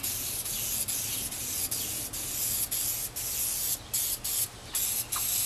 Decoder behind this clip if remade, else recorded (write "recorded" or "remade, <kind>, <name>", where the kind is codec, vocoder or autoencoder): recorded